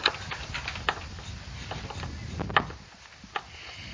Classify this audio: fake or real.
real